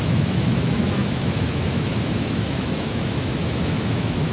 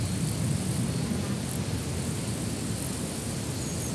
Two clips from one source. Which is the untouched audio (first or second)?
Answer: second